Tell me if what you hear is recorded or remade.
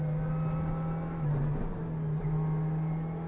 recorded